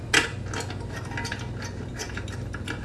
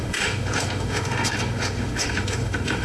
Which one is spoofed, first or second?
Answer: second